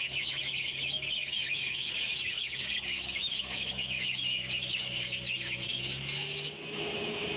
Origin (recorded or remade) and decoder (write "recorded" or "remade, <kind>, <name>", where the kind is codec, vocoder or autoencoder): remade, autoencoder, DAC-VAE